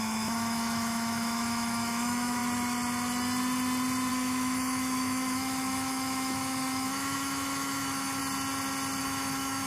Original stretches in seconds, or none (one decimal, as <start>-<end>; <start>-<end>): 2.4-4.1; 8.2-9.0